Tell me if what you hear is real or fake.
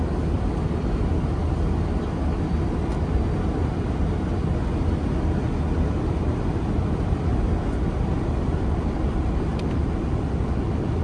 real